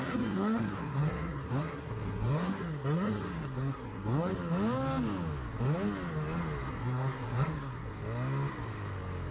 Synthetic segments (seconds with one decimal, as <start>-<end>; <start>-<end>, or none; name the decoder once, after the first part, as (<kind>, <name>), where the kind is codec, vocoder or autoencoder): 0.0-4.3 (codec, SNAC); 6.7-7.9